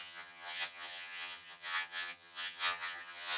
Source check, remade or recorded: remade